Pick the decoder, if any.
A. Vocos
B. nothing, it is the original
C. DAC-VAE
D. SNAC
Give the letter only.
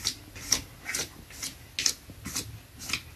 B